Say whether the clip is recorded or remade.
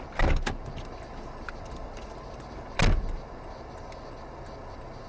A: recorded